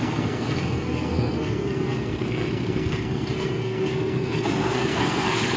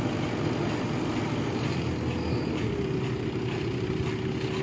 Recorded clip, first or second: second